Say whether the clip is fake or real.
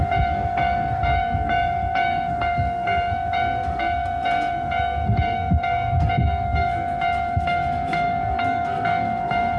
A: fake